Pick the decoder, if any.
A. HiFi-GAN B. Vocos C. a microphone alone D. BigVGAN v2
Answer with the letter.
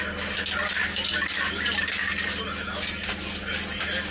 C